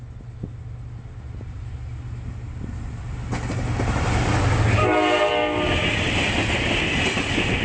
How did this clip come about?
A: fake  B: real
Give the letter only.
B